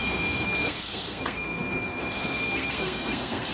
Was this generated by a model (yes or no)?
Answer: yes